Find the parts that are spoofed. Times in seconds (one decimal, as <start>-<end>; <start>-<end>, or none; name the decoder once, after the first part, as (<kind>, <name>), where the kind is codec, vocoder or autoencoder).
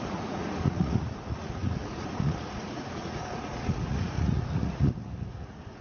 0.0-5.8 (vocoder, Vocos)